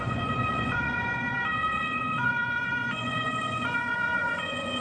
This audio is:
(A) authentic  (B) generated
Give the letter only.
B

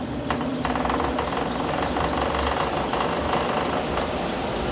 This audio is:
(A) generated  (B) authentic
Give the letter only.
B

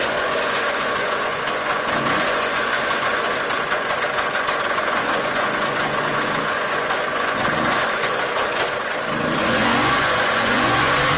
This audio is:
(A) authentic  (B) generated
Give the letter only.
B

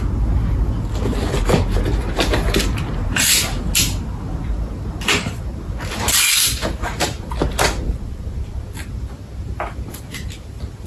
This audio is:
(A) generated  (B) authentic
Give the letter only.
B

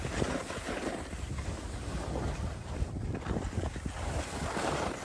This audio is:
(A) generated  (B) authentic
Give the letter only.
B